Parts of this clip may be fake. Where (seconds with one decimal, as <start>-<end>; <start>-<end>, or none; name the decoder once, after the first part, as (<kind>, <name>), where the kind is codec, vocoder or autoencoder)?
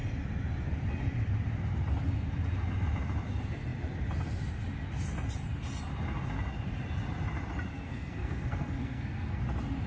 7.7-9.4 (codec, SNAC)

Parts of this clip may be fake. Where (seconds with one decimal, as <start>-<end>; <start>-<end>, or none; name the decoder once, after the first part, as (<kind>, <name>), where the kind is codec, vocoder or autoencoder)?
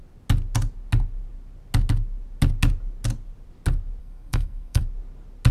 4.0-4.8 (codec, SNAC)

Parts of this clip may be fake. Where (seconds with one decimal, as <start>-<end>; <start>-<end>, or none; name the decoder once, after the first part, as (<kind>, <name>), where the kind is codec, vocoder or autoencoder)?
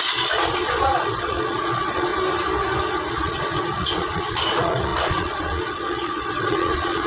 0.0-2.1 (vocoder, Vocos); 3.1-7.1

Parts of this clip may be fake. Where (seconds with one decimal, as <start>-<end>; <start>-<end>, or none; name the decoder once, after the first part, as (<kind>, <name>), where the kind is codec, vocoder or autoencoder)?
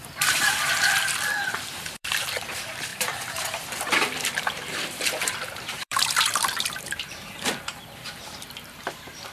0.0-9.3 (vocoder, BigVGAN v2)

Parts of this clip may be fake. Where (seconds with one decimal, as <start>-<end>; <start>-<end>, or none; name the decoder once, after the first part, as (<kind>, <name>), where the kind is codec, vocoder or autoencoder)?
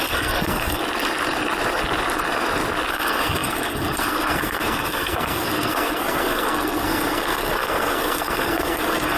0.0-0.8 (codec, SNAC); 2.9-9.2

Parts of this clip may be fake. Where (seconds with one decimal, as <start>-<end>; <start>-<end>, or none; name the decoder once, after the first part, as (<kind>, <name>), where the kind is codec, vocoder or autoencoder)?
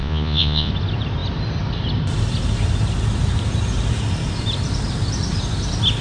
0.0-0.7 (vocoder, Vocos)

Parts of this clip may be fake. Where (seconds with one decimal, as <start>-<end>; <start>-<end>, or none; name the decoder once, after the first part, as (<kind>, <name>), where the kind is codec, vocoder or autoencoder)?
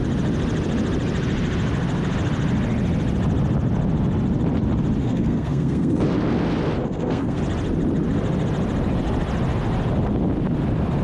5.0-6.0 (codec, SNAC); 6.8-7.4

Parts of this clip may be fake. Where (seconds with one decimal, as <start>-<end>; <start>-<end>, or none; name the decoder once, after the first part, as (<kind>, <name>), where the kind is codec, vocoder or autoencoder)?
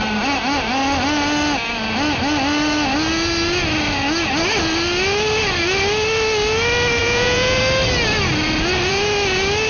7.0-7.6 (vocoder, Vocos)